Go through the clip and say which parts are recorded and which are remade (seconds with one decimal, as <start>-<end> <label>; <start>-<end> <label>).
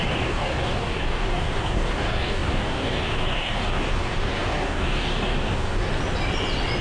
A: 0.0-5.9 remade; 5.9-6.8 recorded